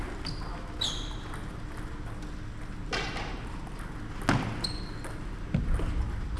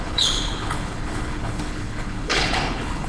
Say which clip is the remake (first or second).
second